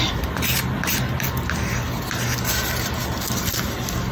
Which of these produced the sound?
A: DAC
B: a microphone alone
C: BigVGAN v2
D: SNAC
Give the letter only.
B